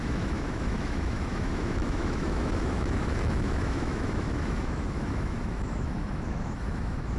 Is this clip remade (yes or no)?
yes